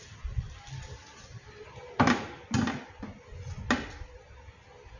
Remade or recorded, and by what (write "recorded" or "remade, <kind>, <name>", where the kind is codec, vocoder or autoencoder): recorded